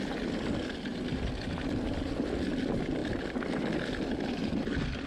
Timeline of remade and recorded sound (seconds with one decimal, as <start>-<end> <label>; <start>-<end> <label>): 0.0-5.1 recorded